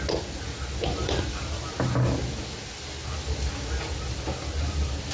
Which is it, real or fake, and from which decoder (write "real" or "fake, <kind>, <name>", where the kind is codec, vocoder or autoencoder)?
real